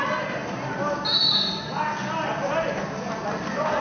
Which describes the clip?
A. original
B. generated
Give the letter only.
A